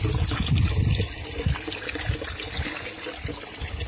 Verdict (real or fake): real